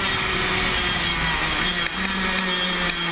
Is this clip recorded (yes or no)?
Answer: yes